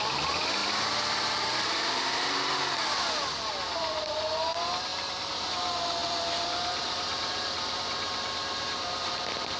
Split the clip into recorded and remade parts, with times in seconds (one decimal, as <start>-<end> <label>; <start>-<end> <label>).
0.0-0.6 recorded; 0.6-4.1 remade; 4.1-4.9 recorded; 4.9-5.5 remade; 5.5-6.0 recorded; 6.0-7.7 remade; 7.7-9.6 recorded